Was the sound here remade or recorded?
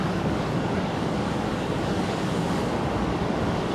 remade